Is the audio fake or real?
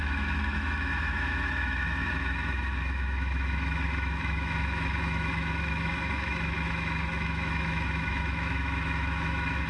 fake